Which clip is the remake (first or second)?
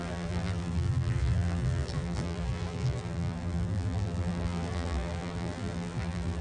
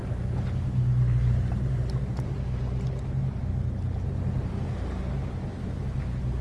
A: first